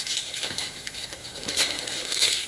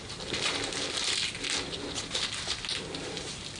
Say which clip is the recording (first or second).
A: second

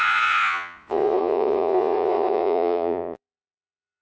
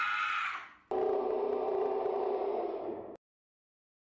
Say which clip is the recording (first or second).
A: second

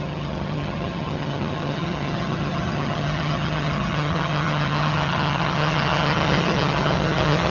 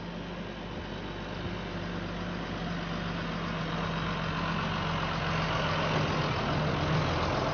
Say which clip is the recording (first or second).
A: second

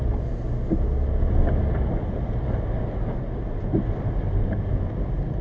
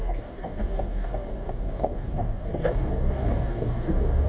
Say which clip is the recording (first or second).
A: first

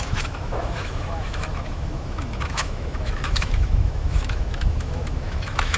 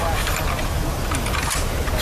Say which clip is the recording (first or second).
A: second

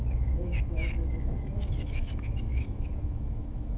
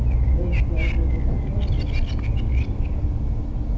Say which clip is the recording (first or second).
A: second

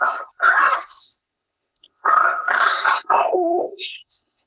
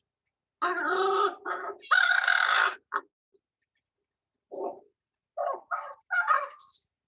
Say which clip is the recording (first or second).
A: second